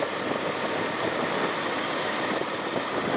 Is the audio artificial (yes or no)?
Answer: no